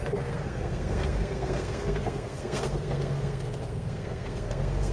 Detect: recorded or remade remade